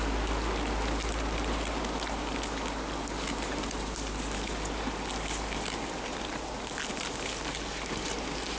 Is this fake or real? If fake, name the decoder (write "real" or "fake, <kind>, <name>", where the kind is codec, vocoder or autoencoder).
real